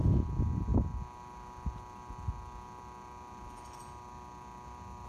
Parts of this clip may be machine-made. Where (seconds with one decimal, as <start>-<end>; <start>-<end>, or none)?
none